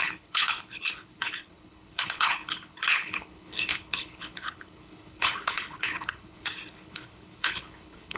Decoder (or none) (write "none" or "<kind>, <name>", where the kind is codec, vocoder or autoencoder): codec, HILCodec